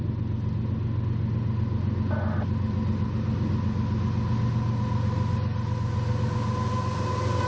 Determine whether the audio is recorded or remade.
recorded